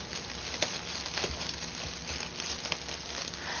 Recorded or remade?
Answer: recorded